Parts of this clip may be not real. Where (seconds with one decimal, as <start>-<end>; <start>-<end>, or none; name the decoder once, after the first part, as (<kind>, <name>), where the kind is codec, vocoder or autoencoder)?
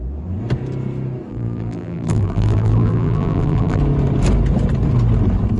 1.3-3.8 (vocoder, BigVGAN v2)